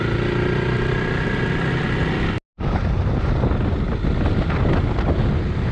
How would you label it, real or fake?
real